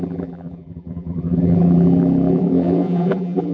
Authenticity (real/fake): fake